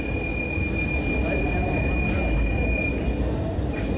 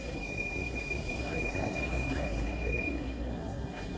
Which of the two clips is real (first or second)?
first